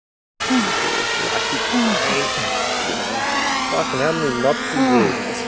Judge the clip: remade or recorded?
recorded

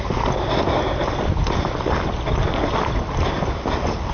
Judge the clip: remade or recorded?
recorded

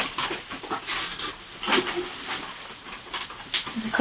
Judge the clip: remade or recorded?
recorded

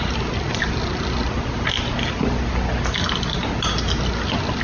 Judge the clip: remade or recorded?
recorded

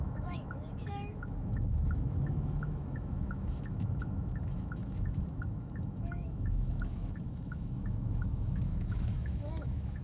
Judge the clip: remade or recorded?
remade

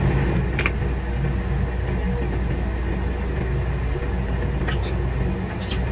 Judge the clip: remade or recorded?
recorded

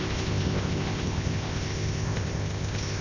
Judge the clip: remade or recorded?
remade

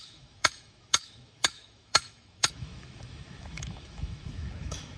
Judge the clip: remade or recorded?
remade